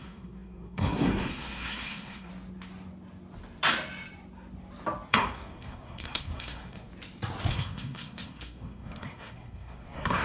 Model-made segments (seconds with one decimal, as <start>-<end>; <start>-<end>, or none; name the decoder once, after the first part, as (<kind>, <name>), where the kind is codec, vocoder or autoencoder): 0.0-2.3 (codec, SNAC); 5.1-6.9; 7.5-10.2